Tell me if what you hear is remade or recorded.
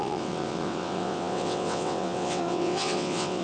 remade